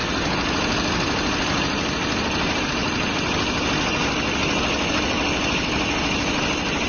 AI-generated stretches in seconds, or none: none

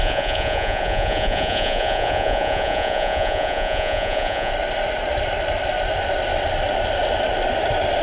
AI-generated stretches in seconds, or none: 0.0-4.5 (vocoder, Vocos)

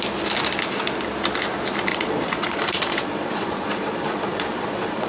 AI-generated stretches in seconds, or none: 1.9-5.1 (vocoder, Vocos)

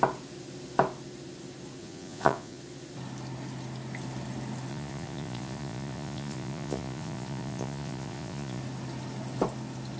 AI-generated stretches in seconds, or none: 1.8-2.6 (vocoder, Vocos); 4.7-8.6

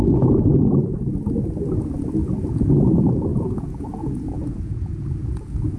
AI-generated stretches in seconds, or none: 3.3-5.8 (vocoder, Vocos)

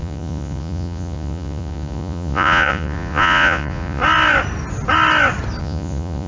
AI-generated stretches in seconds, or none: 0.0-4.0 (vocoder, Vocos); 5.6-6.3